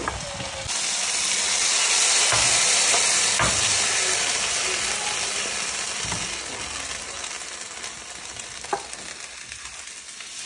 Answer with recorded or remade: recorded